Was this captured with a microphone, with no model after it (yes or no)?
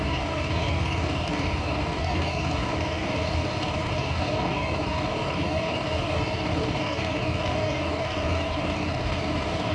no